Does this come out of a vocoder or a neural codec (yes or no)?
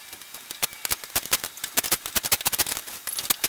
no